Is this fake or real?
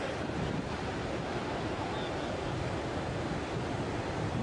real